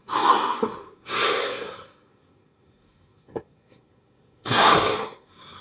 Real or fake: fake